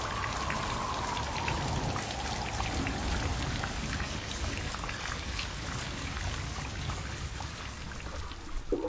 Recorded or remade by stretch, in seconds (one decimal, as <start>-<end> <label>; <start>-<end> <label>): 0.0-3.3 recorded; 3.3-7.8 remade; 7.8-8.9 recorded